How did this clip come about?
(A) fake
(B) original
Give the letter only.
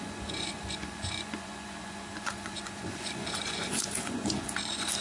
A